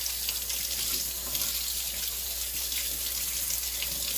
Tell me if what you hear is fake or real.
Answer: real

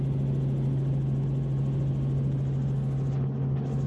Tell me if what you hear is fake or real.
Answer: real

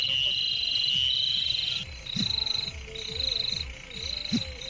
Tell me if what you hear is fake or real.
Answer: real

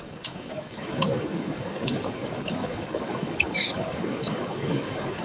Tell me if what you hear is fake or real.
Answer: fake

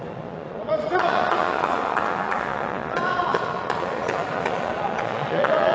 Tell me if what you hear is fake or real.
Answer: fake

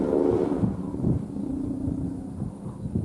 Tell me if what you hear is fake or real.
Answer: real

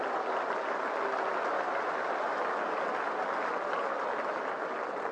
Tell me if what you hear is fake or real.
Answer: real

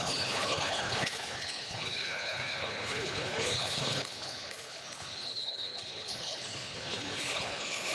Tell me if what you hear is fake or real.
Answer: fake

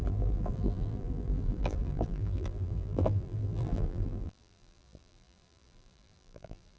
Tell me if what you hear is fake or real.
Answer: fake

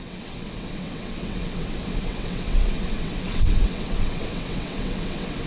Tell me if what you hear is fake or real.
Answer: fake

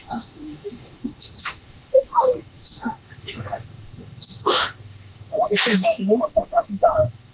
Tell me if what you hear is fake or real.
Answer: fake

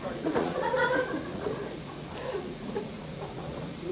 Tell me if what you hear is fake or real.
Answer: fake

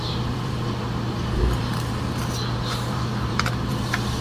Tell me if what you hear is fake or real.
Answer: fake